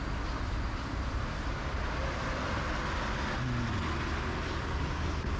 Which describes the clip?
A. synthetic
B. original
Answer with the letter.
B